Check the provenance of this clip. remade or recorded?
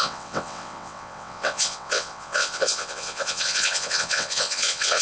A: remade